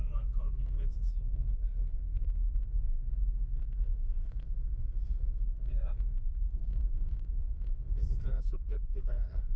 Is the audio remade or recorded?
remade